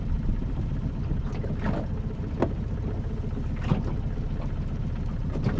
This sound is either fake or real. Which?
real